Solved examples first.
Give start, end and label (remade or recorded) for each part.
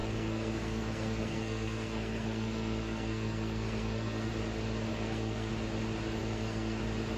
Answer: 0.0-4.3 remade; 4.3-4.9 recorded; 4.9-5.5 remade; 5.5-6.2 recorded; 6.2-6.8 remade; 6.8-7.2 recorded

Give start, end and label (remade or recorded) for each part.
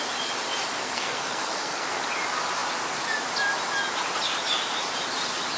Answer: 0.0-0.8 recorded; 0.8-2.0 remade; 2.0-5.6 recorded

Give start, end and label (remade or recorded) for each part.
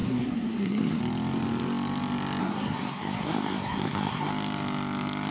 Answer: 0.0-1.0 remade; 1.0-2.4 recorded; 2.4-4.3 remade; 4.3-5.3 recorded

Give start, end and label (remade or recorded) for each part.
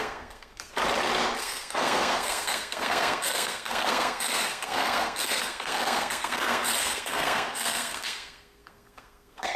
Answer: 0.0-0.8 remade; 0.8-1.4 recorded; 1.4-9.6 remade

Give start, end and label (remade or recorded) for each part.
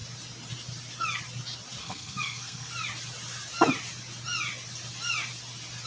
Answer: 0.0-1.8 recorded; 1.8-2.7 remade; 2.7-5.9 recorded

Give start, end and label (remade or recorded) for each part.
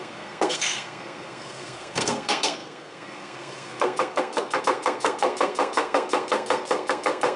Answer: 0.0-7.4 remade